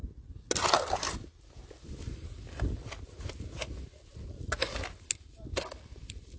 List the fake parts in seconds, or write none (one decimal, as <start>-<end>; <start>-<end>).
none